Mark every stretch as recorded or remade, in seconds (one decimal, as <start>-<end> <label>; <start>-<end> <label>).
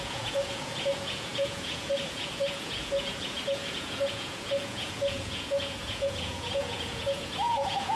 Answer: 0.0-8.0 remade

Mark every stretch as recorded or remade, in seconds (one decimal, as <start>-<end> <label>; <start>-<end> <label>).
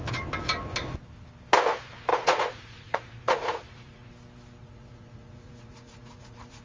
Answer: 0.0-2.1 recorded; 2.1-4.1 remade; 4.1-4.6 recorded; 4.6-6.6 remade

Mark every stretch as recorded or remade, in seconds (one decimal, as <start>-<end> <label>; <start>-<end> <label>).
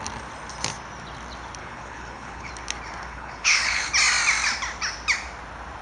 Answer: 0.0-1.6 recorded; 1.6-2.5 remade; 2.5-3.1 recorded; 3.1-3.9 remade; 3.9-5.8 recorded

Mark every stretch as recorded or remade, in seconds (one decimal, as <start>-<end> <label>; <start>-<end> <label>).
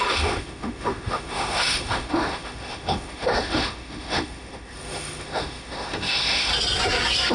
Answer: 0.0-6.5 remade; 6.5-7.3 recorded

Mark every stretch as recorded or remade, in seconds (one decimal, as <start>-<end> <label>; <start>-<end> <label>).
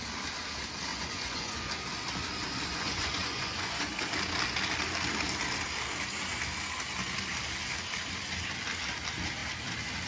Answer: 0.0-0.9 recorded; 0.9-1.7 remade; 1.7-2.7 recorded; 2.7-3.9 remade; 3.9-10.1 recorded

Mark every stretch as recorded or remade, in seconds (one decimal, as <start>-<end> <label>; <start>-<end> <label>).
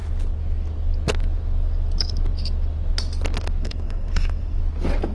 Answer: 0.0-3.6 recorded; 3.6-4.6 remade; 4.6-5.1 recorded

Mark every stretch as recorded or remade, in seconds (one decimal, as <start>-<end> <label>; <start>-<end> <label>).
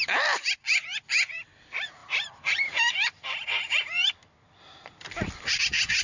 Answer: 0.0-2.0 recorded; 2.0-5.6 remade; 5.6-6.0 recorded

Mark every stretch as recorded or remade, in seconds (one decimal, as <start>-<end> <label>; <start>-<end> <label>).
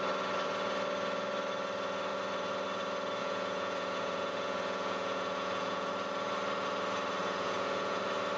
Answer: 0.0-3.2 recorded; 3.2-5.9 remade; 5.9-7.2 recorded; 7.2-8.0 remade; 8.0-8.4 recorded